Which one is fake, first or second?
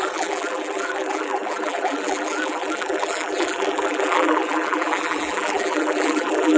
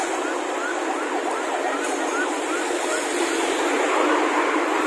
first